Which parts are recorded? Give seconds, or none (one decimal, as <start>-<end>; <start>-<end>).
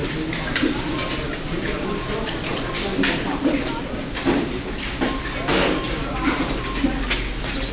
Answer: 0.0-7.7